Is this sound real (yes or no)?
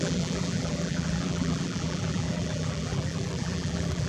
no